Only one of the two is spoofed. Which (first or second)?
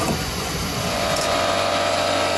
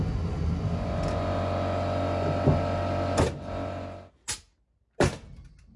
first